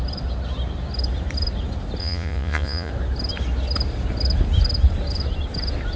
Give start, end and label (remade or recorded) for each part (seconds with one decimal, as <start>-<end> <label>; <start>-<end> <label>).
0.0-2.0 recorded; 2.0-2.9 remade; 2.9-6.0 recorded